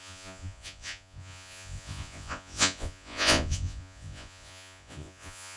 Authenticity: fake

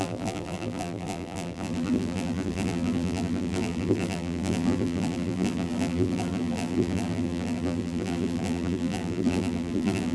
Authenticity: fake